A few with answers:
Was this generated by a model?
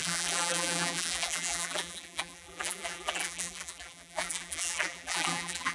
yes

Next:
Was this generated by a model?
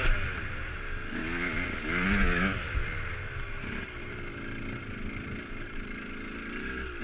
no